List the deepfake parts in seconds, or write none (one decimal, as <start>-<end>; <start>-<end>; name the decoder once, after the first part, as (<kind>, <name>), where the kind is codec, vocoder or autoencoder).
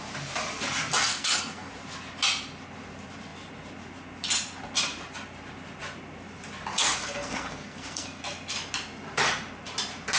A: 1.0-1.7 (codec, SNAC); 6.7-8.2